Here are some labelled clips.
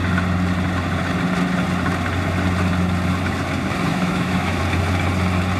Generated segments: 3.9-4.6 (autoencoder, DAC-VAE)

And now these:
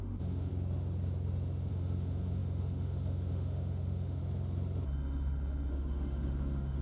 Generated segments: 0.0-0.5 (autoencoder, DAC-VAE); 1.7-4.2; 5.7-6.8